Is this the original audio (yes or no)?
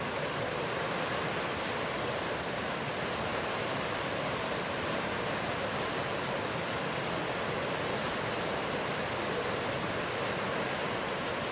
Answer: yes